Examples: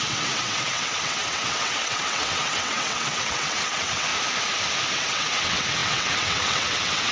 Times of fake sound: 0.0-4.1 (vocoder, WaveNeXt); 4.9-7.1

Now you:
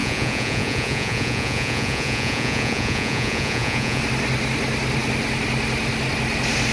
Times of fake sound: 0.0-4.0 (vocoder, Vocos)

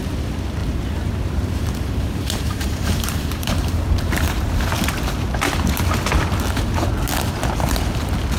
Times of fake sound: 0.6-4.7 (vocoder, BigVGAN v2)

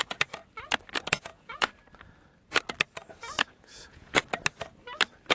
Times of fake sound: 0.0-0.4 (vocoder, Vocos); 1.1-1.7; 3.5-4.2

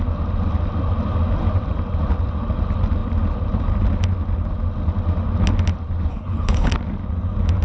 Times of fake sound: 6.1-6.7 (codec, HILCodec)

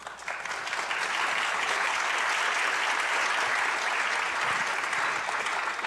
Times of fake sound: 1.5-2.0 (codec, HILCodec)